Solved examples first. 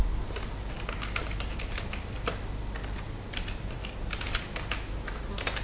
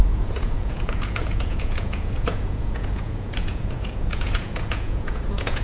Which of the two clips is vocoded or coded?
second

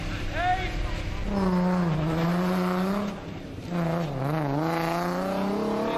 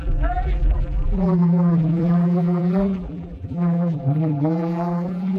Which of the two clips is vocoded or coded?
second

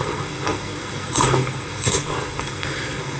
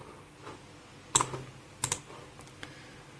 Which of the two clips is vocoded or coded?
first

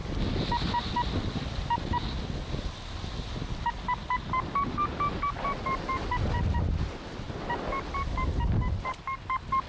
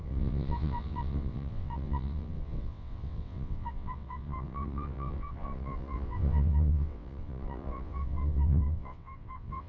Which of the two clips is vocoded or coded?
second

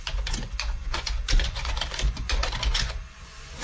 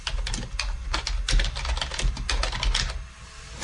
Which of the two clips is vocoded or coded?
first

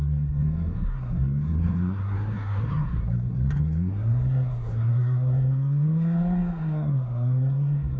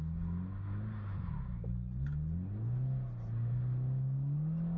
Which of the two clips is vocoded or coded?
first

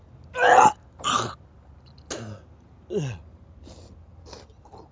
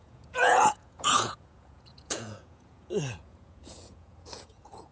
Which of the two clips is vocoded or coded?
second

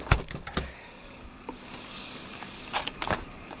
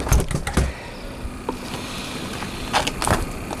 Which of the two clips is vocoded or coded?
first